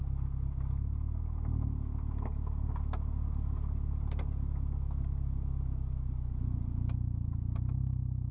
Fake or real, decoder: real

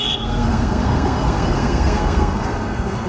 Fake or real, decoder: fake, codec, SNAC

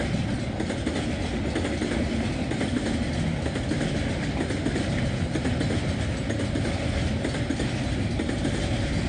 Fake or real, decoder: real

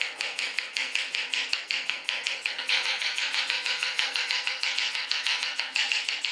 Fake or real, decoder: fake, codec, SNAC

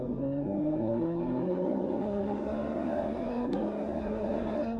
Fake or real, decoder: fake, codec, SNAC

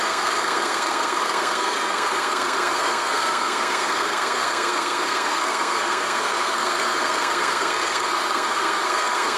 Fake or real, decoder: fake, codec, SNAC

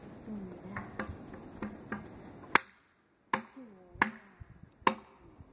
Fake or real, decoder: real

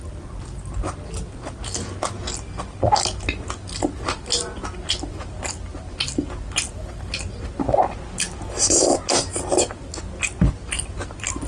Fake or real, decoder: real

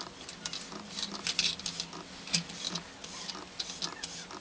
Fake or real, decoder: real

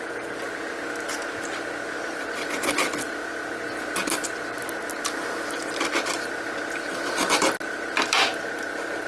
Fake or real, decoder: real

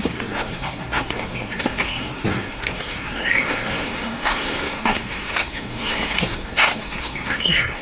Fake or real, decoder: fake, codec, SNAC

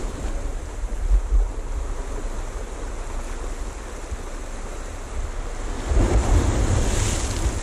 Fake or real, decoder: real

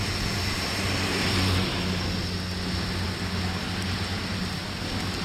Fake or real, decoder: real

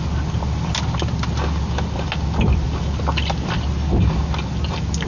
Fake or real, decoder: real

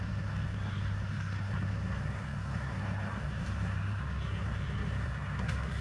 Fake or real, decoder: fake, codec, SNAC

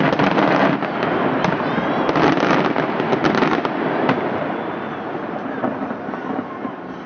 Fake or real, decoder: real